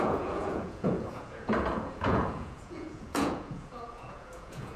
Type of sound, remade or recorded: remade